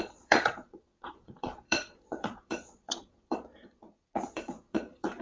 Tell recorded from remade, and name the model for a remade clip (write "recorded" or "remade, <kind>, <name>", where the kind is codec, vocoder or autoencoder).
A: remade, vocoder, Vocos